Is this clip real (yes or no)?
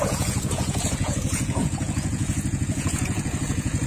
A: no